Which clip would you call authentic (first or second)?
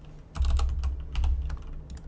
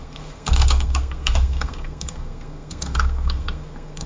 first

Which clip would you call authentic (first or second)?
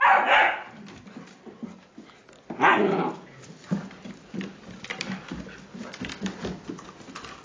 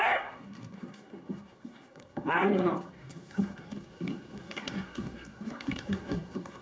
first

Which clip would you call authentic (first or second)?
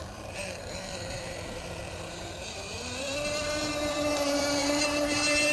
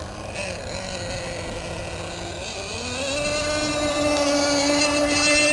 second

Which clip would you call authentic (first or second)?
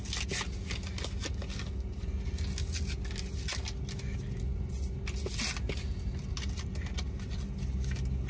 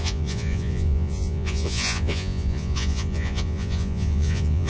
first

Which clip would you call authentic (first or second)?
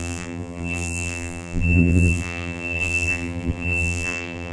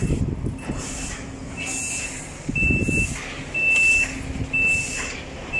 second